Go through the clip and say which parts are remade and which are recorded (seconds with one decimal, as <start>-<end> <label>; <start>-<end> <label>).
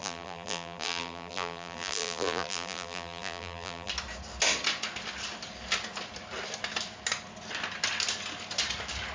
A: 0.0-3.9 remade; 3.9-9.1 recorded